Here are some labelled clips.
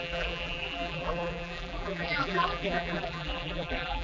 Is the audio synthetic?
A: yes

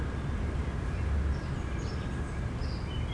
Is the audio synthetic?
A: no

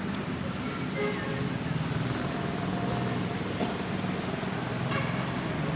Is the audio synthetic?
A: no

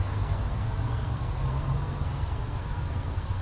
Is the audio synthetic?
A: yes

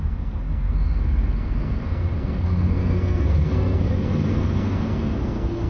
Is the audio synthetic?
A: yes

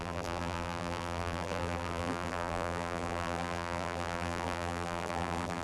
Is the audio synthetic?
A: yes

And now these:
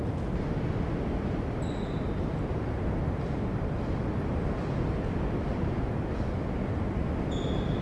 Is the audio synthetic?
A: no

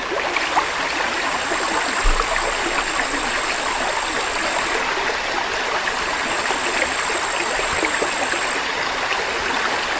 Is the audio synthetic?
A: no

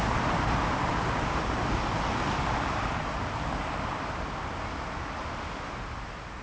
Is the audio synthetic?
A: no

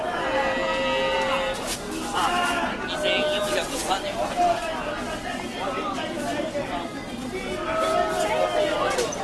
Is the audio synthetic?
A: no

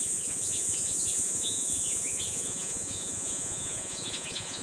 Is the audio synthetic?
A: yes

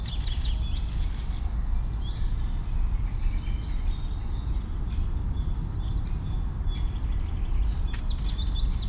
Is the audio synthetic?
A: no